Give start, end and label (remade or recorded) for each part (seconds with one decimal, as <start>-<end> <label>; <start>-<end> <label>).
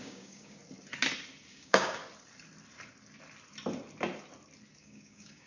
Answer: 0.0-0.6 remade; 0.6-1.5 recorded; 1.5-2.0 remade; 2.0-4.8 recorded; 4.8-5.5 remade